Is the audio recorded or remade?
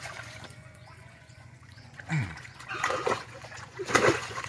remade